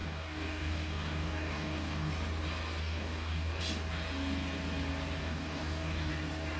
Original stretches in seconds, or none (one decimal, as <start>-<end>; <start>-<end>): 2.1-2.8; 3.6-5.2; 6.1-6.6